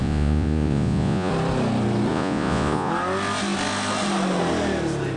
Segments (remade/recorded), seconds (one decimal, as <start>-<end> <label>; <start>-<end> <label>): 0.0-1.3 remade; 1.3-2.1 recorded; 2.1-2.9 remade; 2.9-5.2 recorded

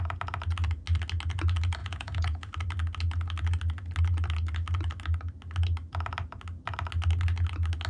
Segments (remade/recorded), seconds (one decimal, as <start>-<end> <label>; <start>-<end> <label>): 0.0-1.8 recorded; 1.8-2.5 remade; 2.5-7.9 recorded

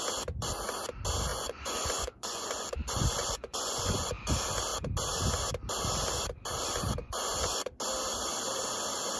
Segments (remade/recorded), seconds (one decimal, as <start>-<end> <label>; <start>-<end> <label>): 0.0-1.3 recorded; 1.3-4.1 remade; 4.1-7.0 recorded; 7.0-7.7 remade; 7.7-9.2 recorded

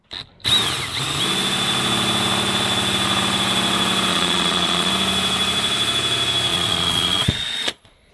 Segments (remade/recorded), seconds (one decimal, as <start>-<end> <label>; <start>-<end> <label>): 0.0-4.1 recorded; 4.1-4.9 remade; 4.9-6.5 recorded; 6.5-8.1 remade